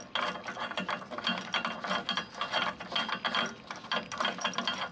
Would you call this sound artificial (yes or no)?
no